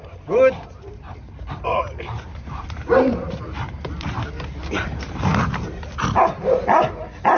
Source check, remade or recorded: remade